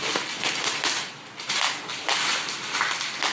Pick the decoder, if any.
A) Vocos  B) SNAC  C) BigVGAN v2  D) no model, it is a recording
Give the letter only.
D